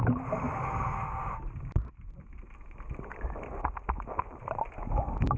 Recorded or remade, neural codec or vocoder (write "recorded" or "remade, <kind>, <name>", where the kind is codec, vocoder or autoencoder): recorded